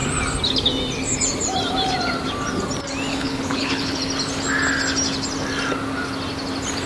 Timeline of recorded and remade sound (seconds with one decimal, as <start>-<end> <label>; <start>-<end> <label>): 0.0-3.1 recorded; 3.1-4.0 remade; 4.0-6.9 recorded